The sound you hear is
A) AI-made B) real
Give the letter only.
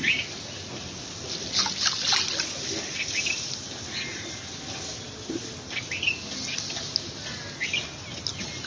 B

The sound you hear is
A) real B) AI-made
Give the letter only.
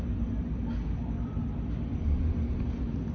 A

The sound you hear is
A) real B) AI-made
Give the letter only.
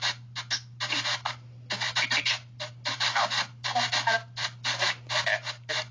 A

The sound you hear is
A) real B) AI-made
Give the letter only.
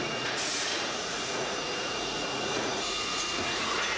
B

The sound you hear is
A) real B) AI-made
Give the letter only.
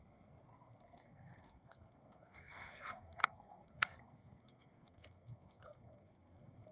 B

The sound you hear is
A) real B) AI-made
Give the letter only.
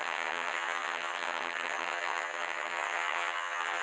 B